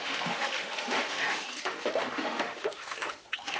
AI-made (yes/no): yes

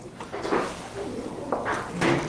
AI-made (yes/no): no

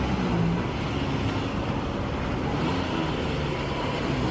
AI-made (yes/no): no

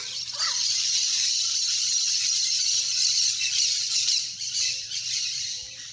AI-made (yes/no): yes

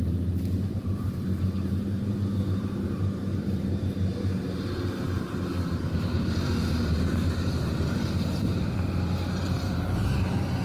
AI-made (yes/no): yes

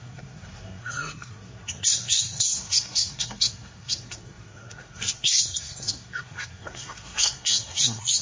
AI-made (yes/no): yes